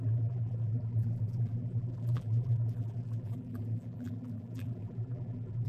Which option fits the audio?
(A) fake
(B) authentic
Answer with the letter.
A